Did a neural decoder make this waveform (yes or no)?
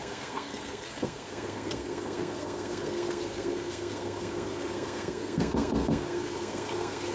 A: yes